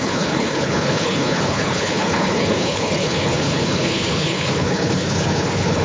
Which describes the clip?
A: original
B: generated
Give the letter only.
B